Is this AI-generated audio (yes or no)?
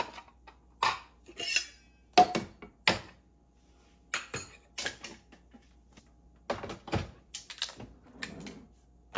no